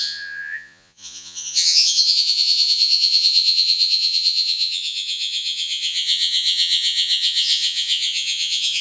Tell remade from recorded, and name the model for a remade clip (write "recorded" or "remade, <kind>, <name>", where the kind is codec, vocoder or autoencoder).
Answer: remade, vocoder, Vocos